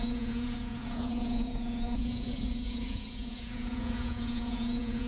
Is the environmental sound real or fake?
fake